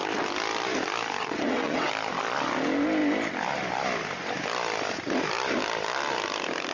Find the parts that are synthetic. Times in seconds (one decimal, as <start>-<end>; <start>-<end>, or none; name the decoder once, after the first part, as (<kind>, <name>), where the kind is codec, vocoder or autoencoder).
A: 1.2-1.9 (vocoder, WaveNeXt)